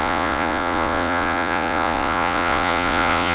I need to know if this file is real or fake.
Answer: fake